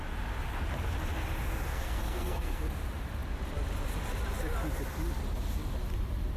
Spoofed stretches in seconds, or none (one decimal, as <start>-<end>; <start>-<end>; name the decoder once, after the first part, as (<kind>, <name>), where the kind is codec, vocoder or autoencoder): 1.7-2.6 (codec, SNAC)